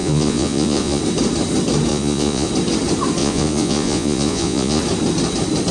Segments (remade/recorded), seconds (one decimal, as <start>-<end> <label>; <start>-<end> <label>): 0.0-1.0 remade; 1.0-1.9 recorded; 1.9-2.5 remade; 2.5-3.2 recorded; 3.2-4.8 remade; 4.8-5.7 recorded